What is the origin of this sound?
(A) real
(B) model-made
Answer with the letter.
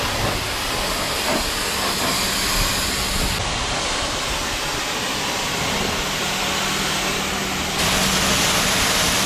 A